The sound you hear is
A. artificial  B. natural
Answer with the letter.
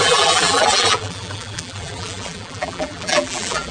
A